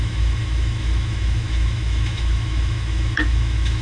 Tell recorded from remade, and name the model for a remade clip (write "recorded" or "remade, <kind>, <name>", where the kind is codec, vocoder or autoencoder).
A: remade, autoencoder, DAC-VAE